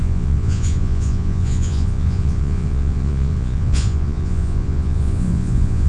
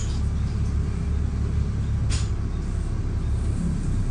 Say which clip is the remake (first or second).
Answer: first